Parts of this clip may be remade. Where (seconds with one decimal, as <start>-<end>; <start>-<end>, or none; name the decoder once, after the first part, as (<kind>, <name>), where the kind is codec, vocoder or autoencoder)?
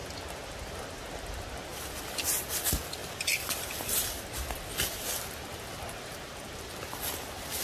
none